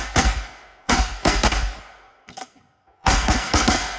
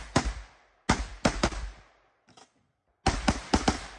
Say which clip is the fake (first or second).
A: first